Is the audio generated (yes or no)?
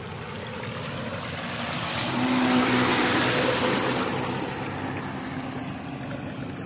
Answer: no